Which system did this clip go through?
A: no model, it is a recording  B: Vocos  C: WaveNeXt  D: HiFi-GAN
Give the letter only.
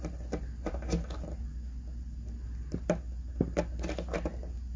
A